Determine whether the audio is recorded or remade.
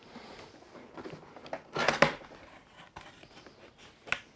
recorded